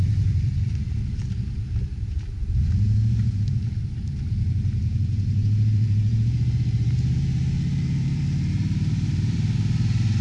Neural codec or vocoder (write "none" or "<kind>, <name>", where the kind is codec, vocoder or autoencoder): vocoder, BigVGAN v2